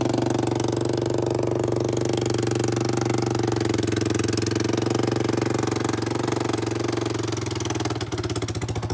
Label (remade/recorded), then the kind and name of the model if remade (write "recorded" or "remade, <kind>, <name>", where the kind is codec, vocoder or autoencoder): recorded